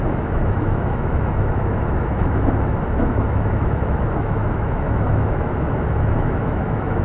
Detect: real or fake fake